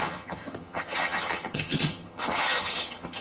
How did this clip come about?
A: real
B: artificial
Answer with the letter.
B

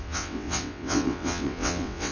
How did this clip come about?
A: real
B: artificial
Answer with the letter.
B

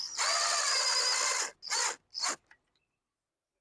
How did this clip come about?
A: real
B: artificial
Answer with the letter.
A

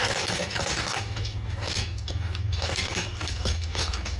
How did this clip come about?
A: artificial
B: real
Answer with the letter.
A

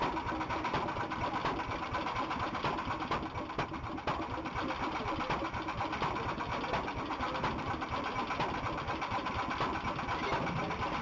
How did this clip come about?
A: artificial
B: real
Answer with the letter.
B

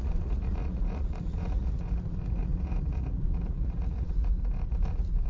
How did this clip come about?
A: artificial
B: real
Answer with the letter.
A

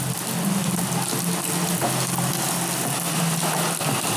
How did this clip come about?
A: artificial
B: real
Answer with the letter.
B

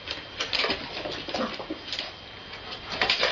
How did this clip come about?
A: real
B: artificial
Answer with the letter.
A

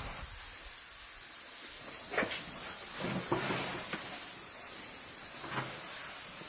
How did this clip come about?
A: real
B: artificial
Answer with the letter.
A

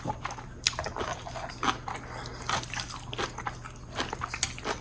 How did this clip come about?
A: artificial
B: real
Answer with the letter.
B